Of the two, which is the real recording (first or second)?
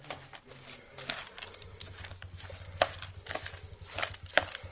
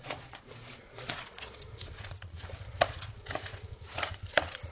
first